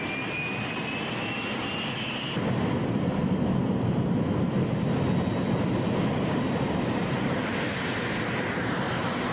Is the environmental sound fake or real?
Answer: real